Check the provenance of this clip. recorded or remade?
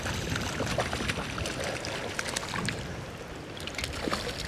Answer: recorded